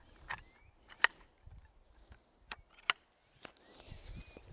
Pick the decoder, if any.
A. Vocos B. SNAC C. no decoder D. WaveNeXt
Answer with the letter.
C